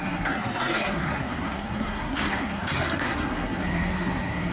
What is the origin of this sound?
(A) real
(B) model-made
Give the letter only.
B